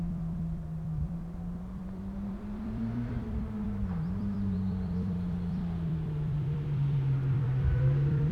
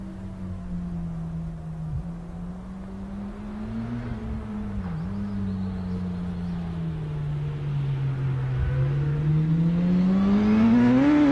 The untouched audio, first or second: second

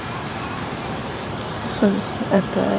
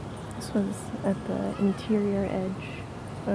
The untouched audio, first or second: second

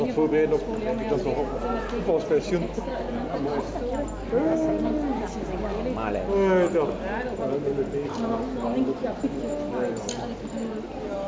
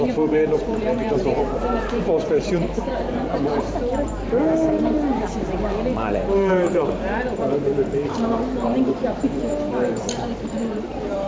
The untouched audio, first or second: first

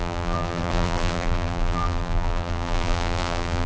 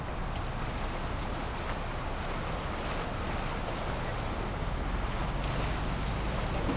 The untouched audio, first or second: second